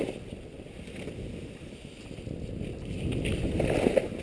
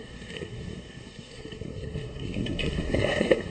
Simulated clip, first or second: second